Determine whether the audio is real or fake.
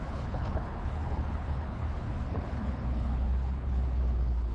fake